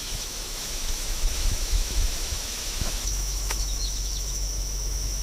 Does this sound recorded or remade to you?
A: remade